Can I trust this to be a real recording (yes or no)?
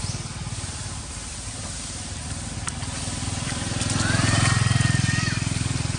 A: yes